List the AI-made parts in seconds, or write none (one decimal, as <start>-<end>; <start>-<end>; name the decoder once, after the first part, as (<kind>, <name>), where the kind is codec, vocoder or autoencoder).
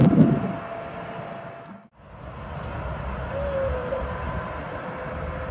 3.8-4.5 (vocoder, BigVGAN v2)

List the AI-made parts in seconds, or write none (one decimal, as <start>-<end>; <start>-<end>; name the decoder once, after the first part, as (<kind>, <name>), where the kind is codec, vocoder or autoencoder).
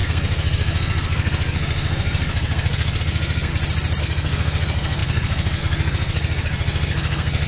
0.0-3.5 (codec, SNAC); 4.0-7.5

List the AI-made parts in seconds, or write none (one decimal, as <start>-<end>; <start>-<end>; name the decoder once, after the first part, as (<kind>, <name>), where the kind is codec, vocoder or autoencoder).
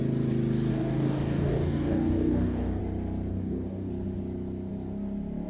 0.7-2.8 (codec, DAC); 3.3-3.9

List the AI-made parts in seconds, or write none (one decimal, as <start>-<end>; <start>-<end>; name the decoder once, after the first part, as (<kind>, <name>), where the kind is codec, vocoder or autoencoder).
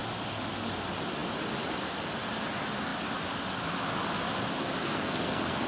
4.8-5.7 (codec, SNAC)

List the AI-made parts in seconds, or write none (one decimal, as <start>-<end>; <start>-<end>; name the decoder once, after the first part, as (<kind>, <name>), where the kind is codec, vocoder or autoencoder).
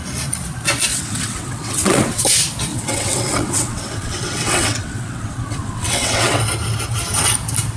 0.9-2.2 (vocoder, WaveNeXt); 2.7-6.4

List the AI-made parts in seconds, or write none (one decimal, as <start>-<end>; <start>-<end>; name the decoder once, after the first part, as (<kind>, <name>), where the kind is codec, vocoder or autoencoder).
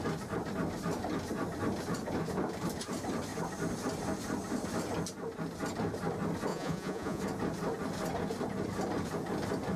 6.5-7.2 (vocoder, Vocos)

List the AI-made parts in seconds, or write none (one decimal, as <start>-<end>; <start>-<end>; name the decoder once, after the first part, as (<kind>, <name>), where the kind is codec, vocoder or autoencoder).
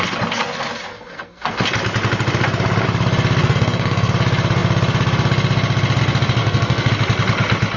0.9-1.6 (codec, SNAC); 3.4-4.1; 6.4-6.9